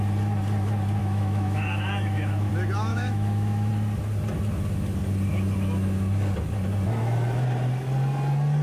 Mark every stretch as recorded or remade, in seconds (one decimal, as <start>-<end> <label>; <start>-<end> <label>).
0.0-1.0 recorded; 1.0-2.5 remade; 2.5-2.9 recorded; 2.9-3.7 remade; 3.7-8.6 recorded

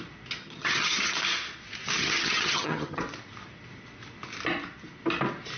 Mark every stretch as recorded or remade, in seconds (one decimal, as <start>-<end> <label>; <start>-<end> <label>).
0.0-0.4 recorded; 0.4-1.1 remade; 1.1-2.0 recorded; 2.0-3.0 remade; 3.0-5.6 recorded

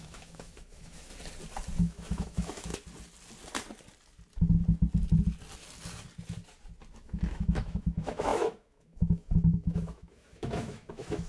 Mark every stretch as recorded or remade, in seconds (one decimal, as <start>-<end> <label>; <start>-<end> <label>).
0.0-1.1 remade; 1.1-1.8 recorded; 1.8-2.7 remade; 2.7-6.9 recorded; 6.9-11.3 remade

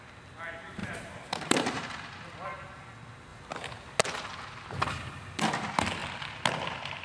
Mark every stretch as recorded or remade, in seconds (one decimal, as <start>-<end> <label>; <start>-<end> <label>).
0.0-0.8 recorded; 0.8-1.8 remade; 1.8-7.0 recorded

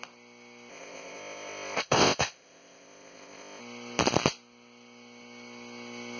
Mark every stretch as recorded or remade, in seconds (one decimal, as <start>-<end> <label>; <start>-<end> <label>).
0.0-0.7 recorded; 0.7-3.6 remade; 3.6-6.2 recorded